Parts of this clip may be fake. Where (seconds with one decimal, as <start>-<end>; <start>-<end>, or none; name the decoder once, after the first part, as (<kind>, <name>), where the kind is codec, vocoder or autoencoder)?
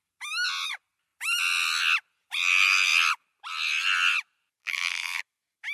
4.6-5.2 (vocoder, BigVGAN v2)